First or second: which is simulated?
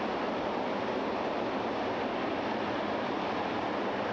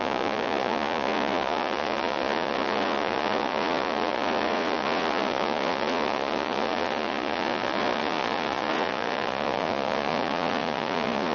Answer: second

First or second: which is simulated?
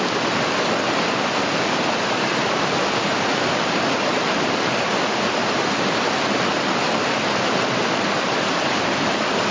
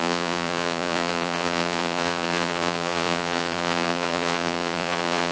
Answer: second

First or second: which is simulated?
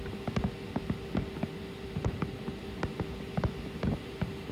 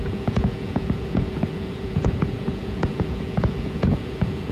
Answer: second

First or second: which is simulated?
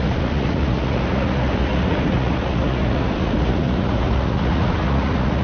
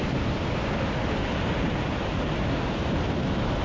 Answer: first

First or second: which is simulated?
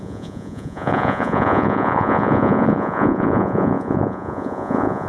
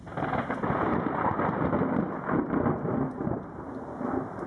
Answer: first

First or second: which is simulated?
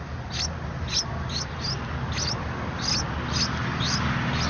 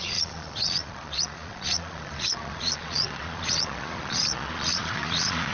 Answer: second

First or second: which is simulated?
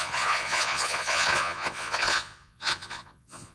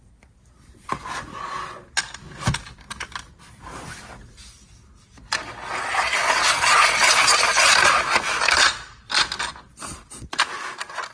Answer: first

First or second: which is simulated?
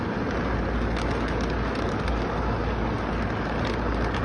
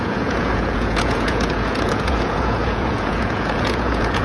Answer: second